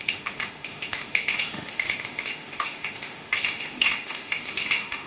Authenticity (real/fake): fake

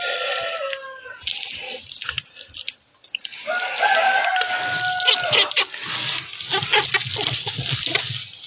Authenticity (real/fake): real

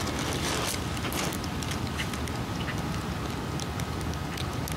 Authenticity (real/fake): real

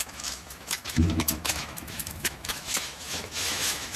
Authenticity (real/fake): fake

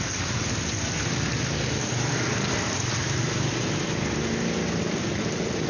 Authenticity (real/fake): fake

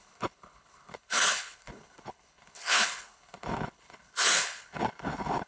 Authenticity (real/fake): fake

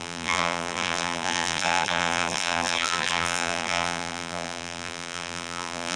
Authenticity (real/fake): fake